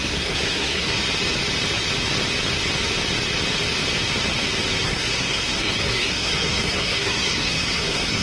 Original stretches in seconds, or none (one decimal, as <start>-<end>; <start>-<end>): 1.0-4.8